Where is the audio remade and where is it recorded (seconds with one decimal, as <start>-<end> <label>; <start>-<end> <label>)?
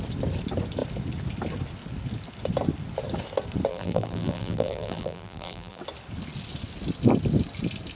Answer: 0.0-3.7 recorded; 3.7-5.8 remade; 5.8-8.0 recorded